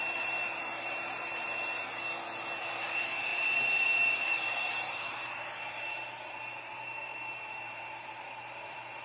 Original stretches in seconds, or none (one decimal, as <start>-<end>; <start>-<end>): 1.8-2.6